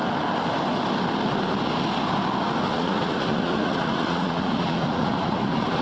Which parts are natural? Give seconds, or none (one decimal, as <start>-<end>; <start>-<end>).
0.0-2.7